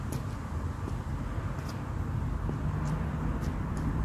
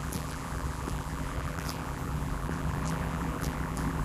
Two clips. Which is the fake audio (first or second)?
second